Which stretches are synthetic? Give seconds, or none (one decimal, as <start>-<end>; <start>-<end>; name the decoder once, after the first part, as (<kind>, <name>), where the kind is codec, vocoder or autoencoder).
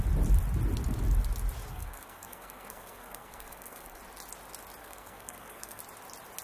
1.7-4.0 (codec, SNAC); 4.8-5.8